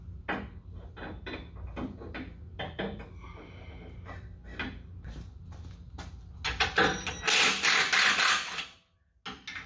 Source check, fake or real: real